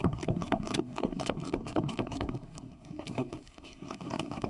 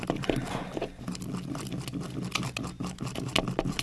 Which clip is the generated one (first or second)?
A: first